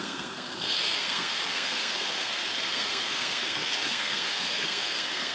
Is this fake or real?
fake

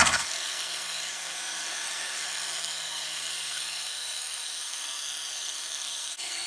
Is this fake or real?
fake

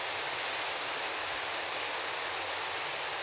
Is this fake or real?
real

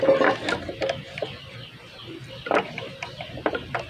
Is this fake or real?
real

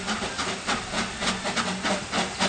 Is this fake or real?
real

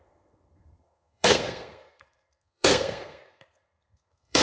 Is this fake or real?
fake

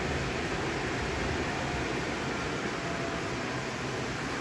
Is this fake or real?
real